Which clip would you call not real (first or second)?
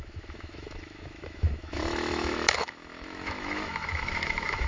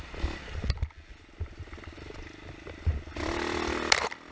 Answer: first